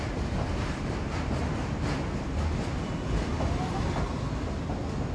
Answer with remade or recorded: recorded